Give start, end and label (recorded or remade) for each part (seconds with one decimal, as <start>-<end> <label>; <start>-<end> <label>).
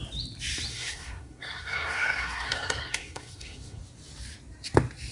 0.0-0.7 recorded; 0.7-3.8 remade; 3.8-5.1 recorded